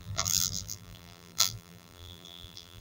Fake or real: fake